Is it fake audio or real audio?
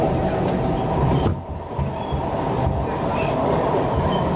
real